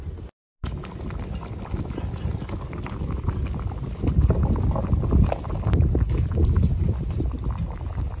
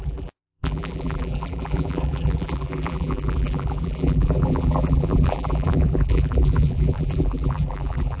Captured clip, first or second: first